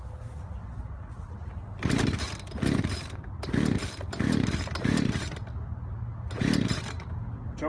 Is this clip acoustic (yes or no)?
yes